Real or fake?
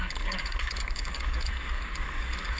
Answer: fake